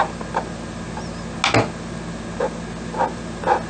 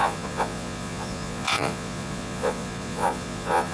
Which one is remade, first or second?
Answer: second